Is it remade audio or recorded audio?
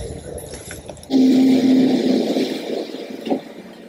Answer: recorded